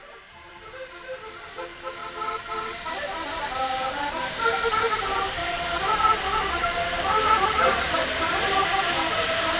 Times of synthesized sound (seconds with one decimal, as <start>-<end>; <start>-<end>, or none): 0.0-2.0; 3.6-5.4; 6.4-9.6